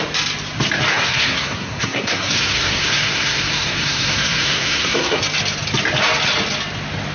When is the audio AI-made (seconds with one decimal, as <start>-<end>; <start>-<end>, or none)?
0.9-5.2

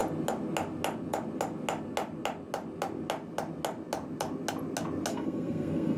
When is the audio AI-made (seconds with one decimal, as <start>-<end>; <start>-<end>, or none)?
5.1-6.0

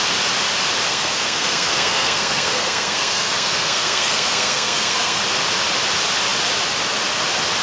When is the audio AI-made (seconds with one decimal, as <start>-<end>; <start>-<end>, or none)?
0.9-5.2

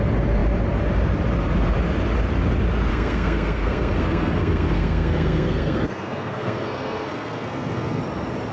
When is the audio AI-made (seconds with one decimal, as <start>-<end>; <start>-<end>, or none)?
2.9-8.0

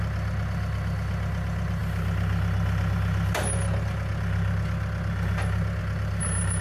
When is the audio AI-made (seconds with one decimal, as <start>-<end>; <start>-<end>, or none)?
none

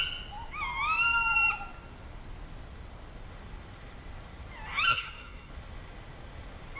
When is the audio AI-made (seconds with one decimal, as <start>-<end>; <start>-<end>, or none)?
4.9-5.5

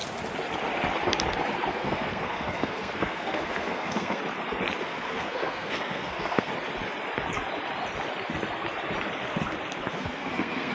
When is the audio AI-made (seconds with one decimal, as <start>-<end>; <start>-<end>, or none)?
1.7-4.2; 4.8-6.5; 9.9-10.7

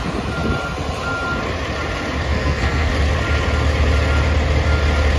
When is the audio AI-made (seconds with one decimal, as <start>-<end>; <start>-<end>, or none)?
2.3-2.9